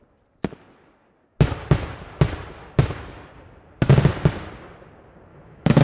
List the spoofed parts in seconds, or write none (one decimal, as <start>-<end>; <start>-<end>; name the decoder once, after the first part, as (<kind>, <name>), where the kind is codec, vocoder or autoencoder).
5.3-5.8 (autoencoder, DAC-VAE)